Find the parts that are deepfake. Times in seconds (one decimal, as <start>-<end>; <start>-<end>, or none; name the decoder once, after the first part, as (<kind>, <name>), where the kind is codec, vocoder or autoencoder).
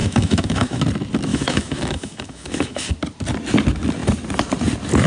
0.0-0.8 (autoencoder, DAC-VAE); 1.3-2.9